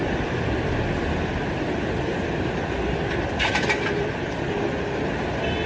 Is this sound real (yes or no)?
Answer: yes